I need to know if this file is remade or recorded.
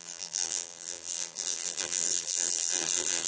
remade